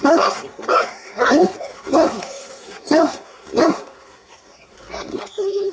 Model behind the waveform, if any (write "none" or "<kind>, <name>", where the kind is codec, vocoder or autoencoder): codec, SNAC